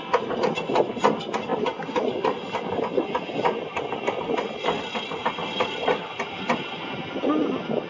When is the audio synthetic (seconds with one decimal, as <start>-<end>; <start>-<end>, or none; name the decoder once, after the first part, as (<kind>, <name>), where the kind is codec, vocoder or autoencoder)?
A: 5.4-7.2 (vocoder, BigVGAN v2)